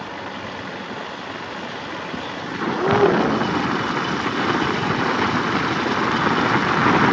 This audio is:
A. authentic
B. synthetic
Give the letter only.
A